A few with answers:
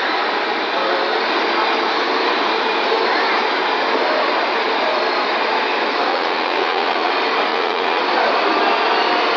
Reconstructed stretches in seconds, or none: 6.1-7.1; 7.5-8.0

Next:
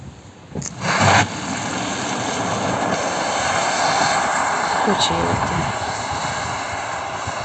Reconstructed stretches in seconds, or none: none

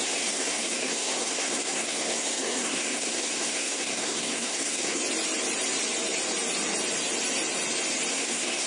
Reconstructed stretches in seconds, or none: 0.0-5.0; 8.1-8.7

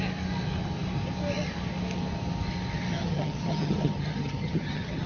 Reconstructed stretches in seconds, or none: 2.9-5.1

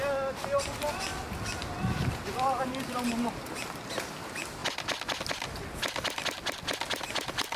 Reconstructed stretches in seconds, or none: none

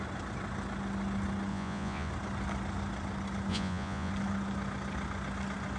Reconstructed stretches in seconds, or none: 1.5-2.1; 3.5-4.1

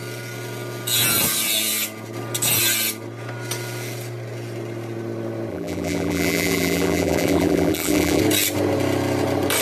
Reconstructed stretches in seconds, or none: 5.5-8.2

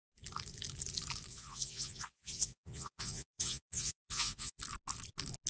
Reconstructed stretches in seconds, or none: 1.3-4.6